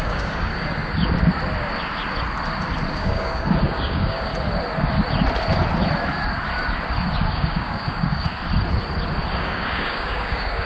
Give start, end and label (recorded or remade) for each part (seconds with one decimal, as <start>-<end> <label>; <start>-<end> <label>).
0.0-0.5 remade; 0.5-2.9 recorded; 2.9-4.3 remade; 4.3-7.3 recorded; 7.3-8.3 remade; 8.3-9.4 recorded; 9.4-10.7 remade